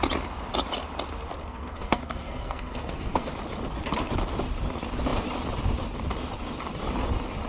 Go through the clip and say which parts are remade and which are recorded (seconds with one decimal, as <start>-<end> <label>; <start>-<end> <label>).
0.0-1.4 recorded; 1.4-3.3 remade; 3.3-7.5 recorded